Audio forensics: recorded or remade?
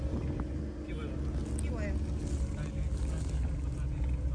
recorded